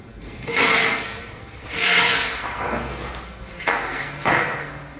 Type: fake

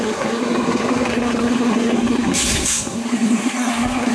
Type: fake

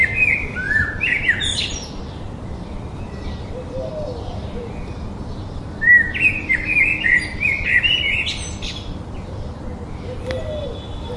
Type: real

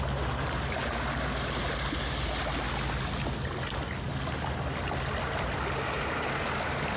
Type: real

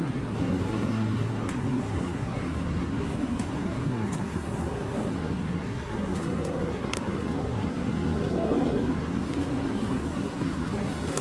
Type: fake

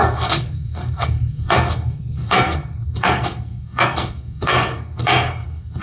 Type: fake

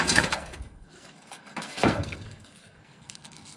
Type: fake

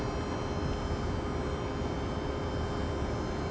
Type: real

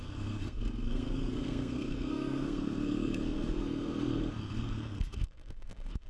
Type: fake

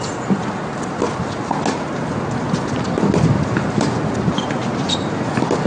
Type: real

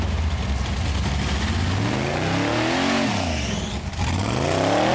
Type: real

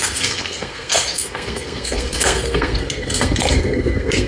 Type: fake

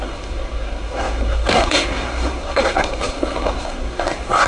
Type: fake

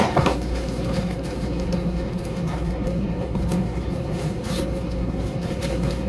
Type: fake